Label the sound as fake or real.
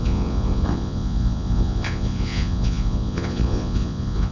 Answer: fake